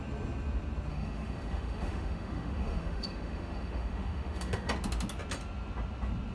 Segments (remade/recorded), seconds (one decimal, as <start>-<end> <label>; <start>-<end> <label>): 0.0-0.9 recorded; 0.9-4.7 remade; 4.7-6.3 recorded